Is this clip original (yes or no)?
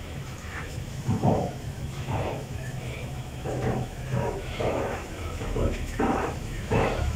no